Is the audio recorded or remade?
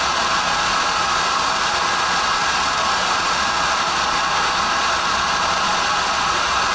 remade